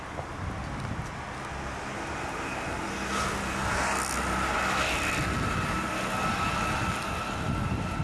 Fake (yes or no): no